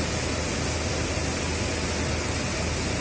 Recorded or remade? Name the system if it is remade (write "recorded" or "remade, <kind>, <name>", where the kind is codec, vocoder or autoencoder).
recorded